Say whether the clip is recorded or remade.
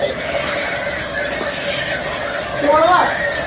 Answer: recorded